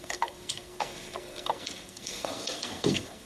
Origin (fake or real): fake